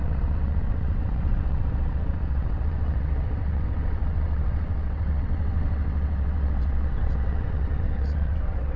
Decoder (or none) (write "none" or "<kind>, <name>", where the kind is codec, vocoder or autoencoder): vocoder, WaveNeXt